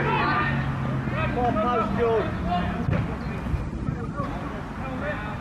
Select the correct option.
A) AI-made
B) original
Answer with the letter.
B